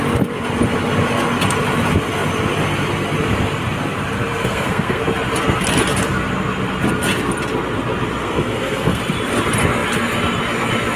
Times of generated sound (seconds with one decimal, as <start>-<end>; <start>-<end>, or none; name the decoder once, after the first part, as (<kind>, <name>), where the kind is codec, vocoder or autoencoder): 4.4-5.0 (codec, SNAC); 8.2-9.0